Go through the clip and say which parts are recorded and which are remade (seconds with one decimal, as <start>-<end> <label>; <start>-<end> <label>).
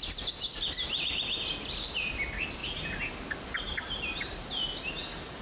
0.0-5.4 recorded